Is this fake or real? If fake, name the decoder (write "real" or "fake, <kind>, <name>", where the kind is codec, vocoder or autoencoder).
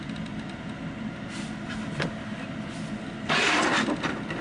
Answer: real